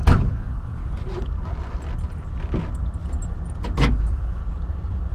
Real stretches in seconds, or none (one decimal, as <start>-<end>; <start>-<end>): 0.8-3.9; 4.4-5.1